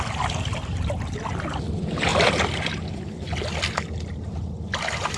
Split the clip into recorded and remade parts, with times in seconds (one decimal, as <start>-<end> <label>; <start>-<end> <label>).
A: 0.0-5.2 recorded